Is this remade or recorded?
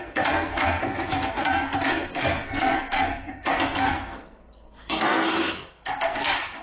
remade